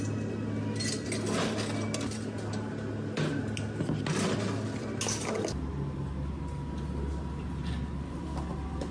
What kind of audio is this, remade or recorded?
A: recorded